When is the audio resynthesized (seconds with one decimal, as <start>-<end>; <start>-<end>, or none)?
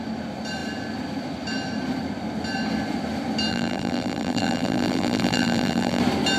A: 3.5-6.0